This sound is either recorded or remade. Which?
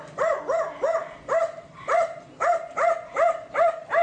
recorded